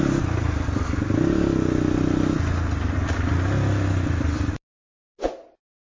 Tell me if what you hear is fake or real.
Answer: real